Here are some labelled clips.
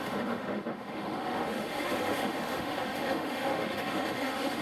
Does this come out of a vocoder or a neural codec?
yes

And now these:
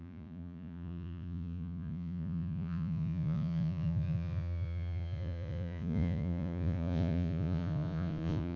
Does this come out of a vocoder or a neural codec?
yes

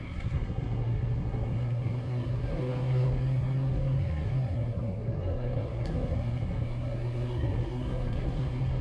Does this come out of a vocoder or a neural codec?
yes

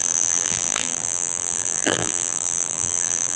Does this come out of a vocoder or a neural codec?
yes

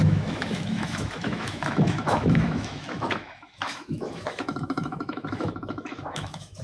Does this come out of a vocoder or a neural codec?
yes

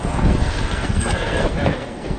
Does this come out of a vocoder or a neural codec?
yes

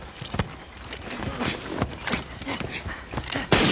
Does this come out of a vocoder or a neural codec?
no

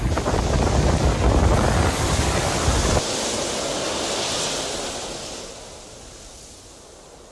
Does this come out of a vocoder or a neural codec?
no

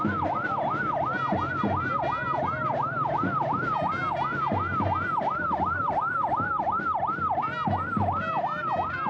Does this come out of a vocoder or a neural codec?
no